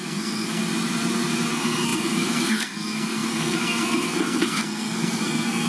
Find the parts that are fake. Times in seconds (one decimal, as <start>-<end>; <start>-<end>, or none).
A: 0.0-0.6; 1.5-5.7

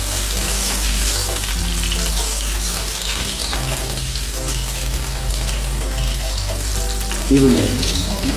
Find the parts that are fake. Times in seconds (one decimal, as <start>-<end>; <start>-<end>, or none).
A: 0.0-1.5; 2.1-6.7; 7.2-8.4

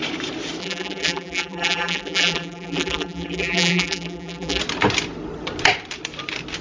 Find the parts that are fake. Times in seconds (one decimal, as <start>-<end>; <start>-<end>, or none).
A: 0.6-4.6

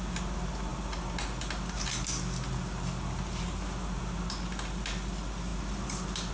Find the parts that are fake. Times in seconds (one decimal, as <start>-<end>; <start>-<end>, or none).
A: none

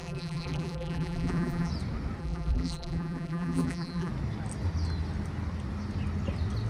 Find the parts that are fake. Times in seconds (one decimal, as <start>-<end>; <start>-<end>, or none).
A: 0.0-1.7; 2.2-4.1

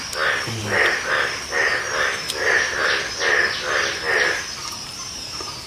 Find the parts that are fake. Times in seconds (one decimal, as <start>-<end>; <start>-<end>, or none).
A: none